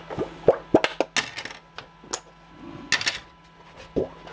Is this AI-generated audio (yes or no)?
no